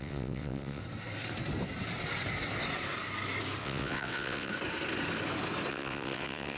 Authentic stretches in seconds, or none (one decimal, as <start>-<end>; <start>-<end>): 0.8-3.6; 4.5-5.7

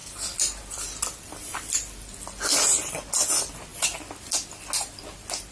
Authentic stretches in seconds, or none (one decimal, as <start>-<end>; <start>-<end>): 0.0-5.5

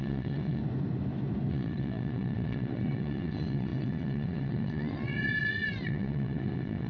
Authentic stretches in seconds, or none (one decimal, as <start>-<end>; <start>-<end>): 0.6-1.5

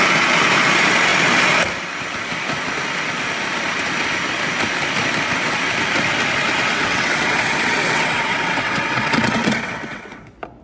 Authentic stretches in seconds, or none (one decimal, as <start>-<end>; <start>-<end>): 0.0-6.7; 10.2-10.6

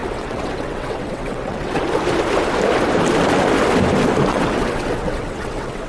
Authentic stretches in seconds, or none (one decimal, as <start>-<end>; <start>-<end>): 1.8-4.3

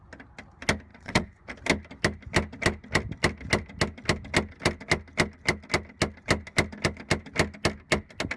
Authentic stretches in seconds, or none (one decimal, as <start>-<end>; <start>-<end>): 0.0-0.9; 1.4-8.4